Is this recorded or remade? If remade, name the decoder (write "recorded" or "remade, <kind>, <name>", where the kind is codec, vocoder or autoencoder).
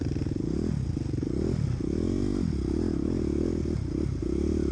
recorded